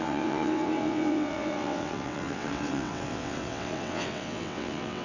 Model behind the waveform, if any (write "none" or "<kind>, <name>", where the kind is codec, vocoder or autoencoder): vocoder, WaveNeXt